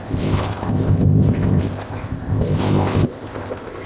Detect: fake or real fake